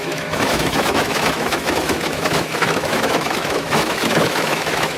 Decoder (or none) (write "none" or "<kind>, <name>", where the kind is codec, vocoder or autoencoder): autoencoder, DAC-VAE